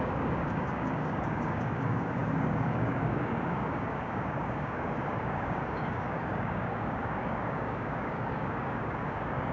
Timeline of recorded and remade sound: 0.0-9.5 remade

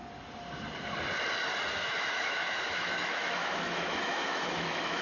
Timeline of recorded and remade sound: 0.0-1.7 recorded; 1.7-5.0 remade

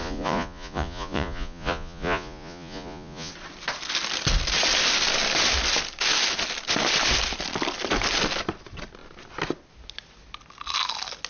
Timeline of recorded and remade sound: 0.0-3.3 remade; 3.3-11.3 recorded

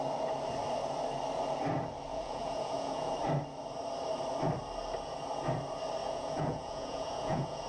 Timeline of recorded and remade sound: 0.0-2.1 recorded; 2.1-3.1 remade; 3.1-6.0 recorded; 6.0-7.7 remade